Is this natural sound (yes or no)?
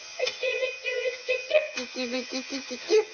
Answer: no